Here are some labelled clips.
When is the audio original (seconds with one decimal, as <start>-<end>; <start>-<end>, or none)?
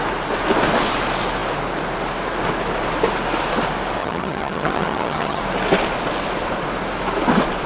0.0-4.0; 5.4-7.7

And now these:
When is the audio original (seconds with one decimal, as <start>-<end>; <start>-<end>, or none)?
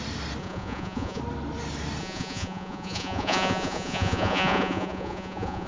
0.0-0.4; 1.2-2.0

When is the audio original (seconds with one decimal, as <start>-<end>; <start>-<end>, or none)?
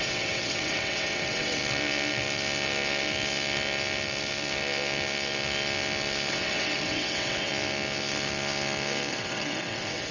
1.6-6.3; 7.5-9.1